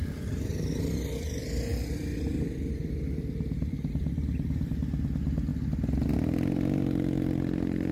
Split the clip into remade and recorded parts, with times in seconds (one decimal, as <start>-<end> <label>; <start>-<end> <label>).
0.0-1.7 recorded; 1.7-4.7 remade; 4.7-7.9 recorded